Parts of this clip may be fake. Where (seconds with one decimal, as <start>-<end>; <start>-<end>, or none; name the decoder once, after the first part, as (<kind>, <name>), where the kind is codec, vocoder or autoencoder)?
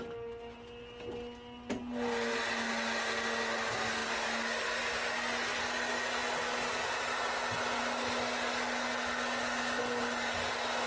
none